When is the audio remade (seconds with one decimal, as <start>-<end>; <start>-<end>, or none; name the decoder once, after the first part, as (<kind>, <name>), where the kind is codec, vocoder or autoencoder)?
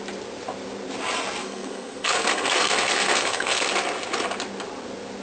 1.4-3.7 (codec, SNAC)